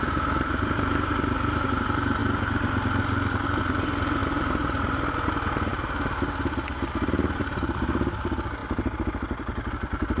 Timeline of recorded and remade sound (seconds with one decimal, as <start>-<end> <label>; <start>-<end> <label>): 0.0-2.2 remade; 2.2-3.6 recorded; 3.6-5.7 remade; 5.7-7.1 recorded; 7.1-8.6 remade; 8.6-9.7 recorded; 9.7-10.2 remade

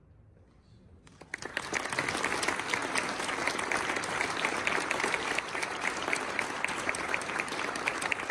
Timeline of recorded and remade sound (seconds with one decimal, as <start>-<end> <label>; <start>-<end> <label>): 0.0-1.1 recorded; 1.1-1.7 remade; 1.7-2.8 recorded; 2.8-7.8 remade; 7.8-8.3 recorded

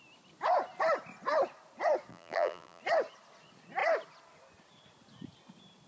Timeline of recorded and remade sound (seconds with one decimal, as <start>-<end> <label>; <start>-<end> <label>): 0.0-2.1 recorded; 2.1-2.8 remade; 2.8-5.9 recorded

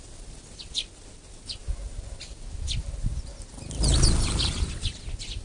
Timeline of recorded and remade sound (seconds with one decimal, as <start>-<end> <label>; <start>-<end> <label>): 0.0-5.4 recorded

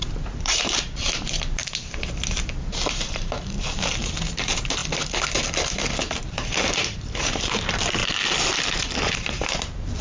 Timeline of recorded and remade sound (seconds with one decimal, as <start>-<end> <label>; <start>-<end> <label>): 0.0-1.6 remade; 1.6-2.9 recorded; 2.9-4.8 remade; 4.8-6.2 recorded; 6.2-8.0 remade; 8.0-10.0 recorded

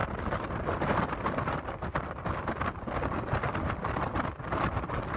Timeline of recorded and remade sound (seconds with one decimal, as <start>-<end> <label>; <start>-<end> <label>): 0.0-5.2 recorded

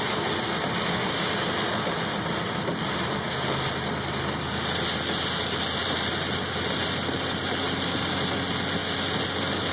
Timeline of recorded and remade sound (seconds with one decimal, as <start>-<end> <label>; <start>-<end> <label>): 0.0-5.8 recorded; 5.8-6.4 remade; 6.4-9.7 recorded